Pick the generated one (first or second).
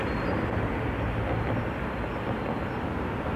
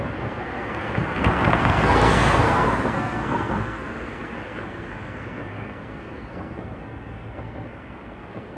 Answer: second